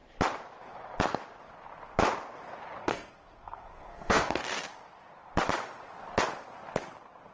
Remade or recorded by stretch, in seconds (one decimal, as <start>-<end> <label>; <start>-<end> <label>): 0.0-2.8 recorded; 2.8-4.4 remade; 4.4-7.3 recorded